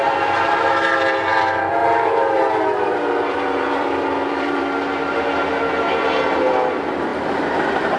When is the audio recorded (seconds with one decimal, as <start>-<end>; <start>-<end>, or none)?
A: 0.0-1.8; 4.6-8.0